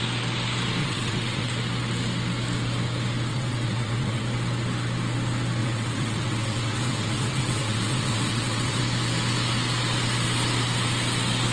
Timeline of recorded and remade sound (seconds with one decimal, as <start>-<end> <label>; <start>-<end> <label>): 0.0-0.8 recorded; 0.8-1.5 remade; 1.5-3.3 recorded; 3.3-4.2 remade; 4.2-5.6 recorded; 5.6-8.8 remade; 8.8-11.5 recorded